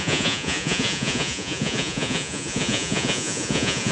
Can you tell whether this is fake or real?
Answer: fake